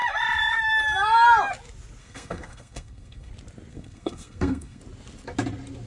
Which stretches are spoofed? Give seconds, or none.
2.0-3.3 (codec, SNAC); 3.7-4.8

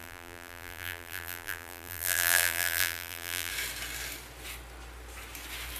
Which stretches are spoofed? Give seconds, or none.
0.0-3.5 (vocoder, BigVGAN v2)

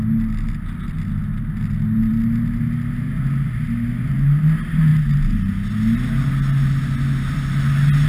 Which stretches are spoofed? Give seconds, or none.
none

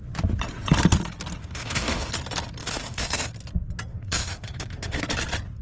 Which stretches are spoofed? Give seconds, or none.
1.4-2.1 (autoencoder, DAC-VAE); 2.6-3.3; 3.9-5.0

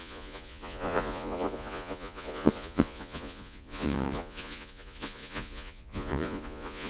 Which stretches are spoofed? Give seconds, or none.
0.0-6.9 (vocoder, Vocos)